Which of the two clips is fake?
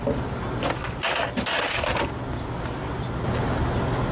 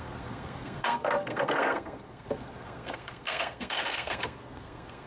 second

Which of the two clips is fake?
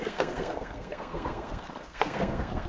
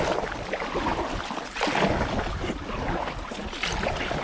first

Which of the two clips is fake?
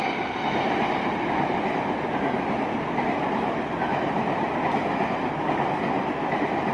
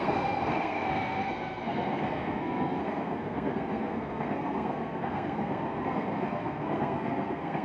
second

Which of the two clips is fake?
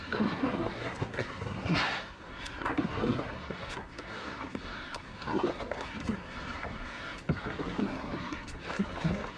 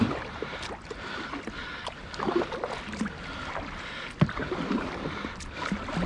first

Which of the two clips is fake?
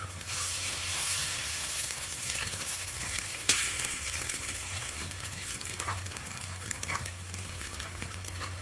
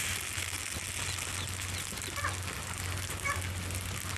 first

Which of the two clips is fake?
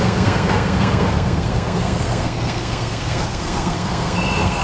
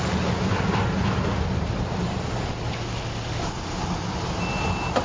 first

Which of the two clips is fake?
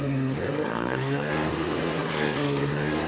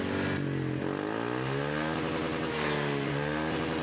first